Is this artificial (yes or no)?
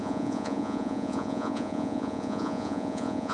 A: yes